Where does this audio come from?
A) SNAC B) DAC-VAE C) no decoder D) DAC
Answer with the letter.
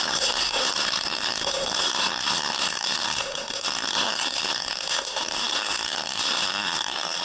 A